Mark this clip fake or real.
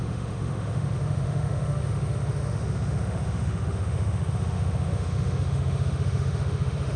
fake